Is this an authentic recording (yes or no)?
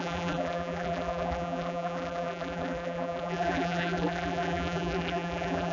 no